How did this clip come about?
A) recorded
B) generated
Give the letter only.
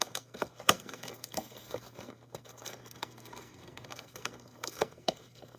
B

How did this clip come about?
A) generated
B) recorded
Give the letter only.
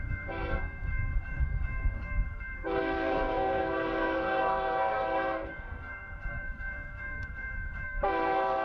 A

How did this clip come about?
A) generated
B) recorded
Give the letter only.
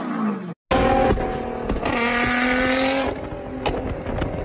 B